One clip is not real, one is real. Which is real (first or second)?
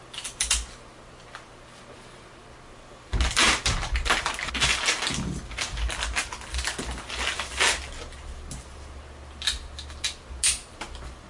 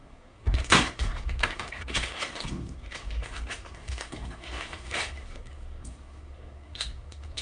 first